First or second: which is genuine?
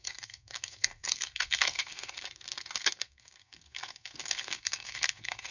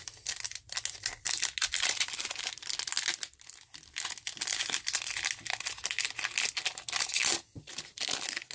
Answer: second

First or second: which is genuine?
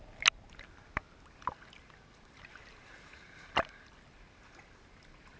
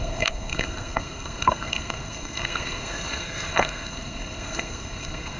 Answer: first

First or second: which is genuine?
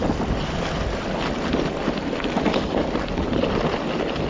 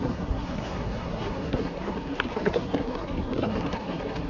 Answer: first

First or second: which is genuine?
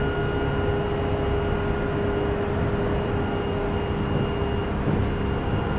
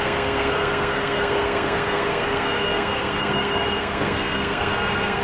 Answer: first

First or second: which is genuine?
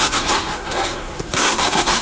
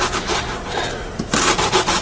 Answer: second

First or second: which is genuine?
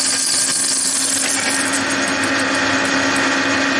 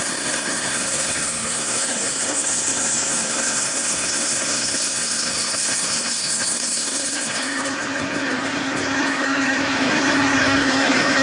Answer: first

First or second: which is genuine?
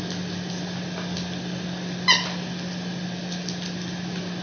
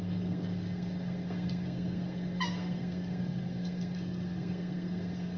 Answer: first